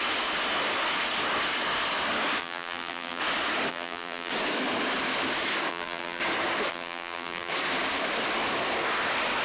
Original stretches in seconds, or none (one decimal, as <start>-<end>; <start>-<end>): 0.0-2.4; 3.2-3.7; 4.3-5.7; 6.2-6.7; 7.5-9.4